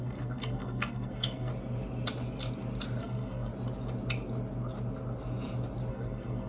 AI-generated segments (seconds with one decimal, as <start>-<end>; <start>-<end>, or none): 0.0-1.5; 3.0-3.5; 5.9-6.5